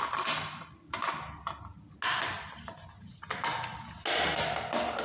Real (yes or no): yes